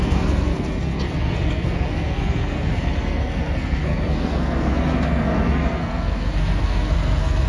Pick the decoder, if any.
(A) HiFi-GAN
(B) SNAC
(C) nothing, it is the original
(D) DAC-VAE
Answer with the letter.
B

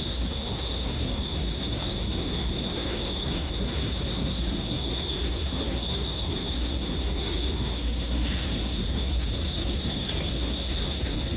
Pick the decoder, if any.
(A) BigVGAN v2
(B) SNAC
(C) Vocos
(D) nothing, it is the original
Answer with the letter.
B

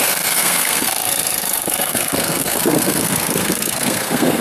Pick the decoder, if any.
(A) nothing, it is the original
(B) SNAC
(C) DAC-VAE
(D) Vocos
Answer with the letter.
B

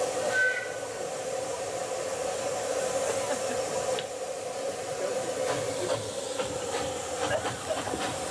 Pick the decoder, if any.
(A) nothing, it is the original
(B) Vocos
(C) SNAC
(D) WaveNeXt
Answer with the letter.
A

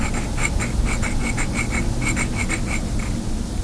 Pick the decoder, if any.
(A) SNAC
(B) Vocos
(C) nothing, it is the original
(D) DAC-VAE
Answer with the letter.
C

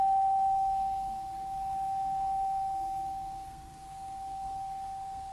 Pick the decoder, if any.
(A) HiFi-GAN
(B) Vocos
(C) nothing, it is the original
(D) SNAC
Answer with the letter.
D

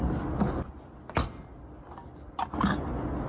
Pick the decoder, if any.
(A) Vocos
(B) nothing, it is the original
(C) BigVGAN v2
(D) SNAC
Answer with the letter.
B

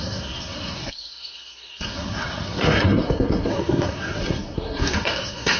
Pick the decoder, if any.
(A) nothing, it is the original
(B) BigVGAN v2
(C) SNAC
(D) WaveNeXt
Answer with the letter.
C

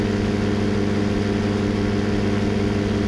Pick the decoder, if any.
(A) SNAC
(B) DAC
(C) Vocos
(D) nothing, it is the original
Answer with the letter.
D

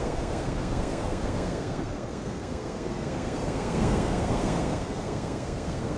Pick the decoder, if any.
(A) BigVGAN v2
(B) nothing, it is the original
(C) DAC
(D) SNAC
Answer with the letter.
D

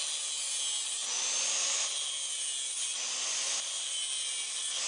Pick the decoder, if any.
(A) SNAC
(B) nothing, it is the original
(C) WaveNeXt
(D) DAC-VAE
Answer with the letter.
B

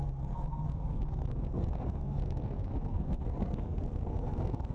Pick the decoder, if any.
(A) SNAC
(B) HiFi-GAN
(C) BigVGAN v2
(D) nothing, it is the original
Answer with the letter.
A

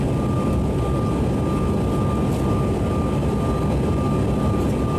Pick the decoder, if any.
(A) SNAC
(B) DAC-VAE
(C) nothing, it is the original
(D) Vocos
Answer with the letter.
C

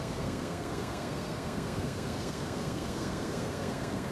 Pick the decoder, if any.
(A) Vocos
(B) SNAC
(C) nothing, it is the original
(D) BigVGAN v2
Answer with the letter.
B